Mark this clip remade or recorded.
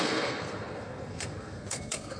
remade